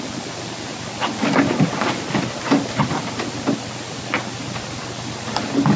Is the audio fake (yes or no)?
no